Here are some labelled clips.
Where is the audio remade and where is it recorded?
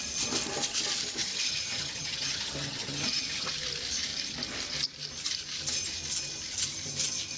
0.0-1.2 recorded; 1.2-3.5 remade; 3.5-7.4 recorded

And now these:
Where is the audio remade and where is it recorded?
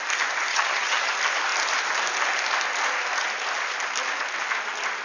0.0-0.5 recorded; 0.5-1.1 remade; 1.1-5.0 recorded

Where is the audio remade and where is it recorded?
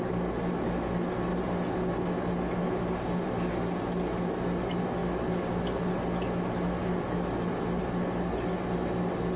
0.0-9.4 recorded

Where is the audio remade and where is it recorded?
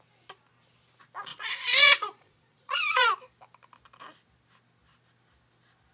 0.0-1.3 recorded; 1.3-3.1 remade; 3.1-5.9 recorded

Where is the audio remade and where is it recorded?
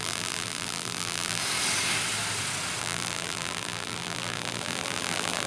0.0-1.4 remade; 1.4-2.8 recorded; 2.8-5.5 remade